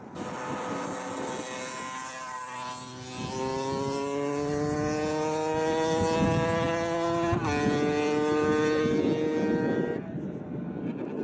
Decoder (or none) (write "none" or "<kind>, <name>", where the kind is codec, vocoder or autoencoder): none